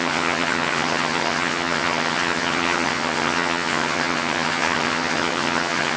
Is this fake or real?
fake